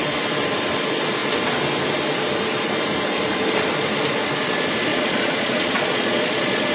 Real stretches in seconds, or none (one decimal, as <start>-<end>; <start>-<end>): 0.0-4.9